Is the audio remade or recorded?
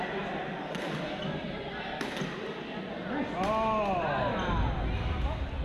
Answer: recorded